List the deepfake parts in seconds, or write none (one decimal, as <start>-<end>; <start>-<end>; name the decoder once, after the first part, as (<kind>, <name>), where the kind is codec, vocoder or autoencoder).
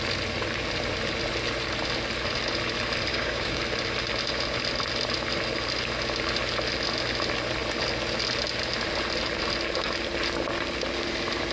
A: 3.1-3.6 (codec, DAC)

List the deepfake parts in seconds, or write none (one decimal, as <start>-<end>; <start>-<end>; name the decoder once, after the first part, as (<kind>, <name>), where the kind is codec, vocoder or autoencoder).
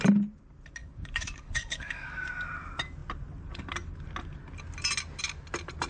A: 0.8-2.3 (codec, DAC)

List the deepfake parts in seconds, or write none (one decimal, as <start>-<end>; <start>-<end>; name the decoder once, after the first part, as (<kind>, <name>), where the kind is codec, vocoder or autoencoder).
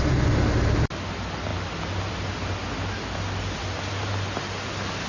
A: none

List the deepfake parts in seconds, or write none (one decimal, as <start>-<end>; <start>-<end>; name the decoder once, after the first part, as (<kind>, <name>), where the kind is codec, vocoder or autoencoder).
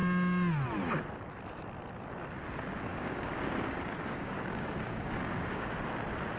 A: 2.9-5.7 (codec, DAC)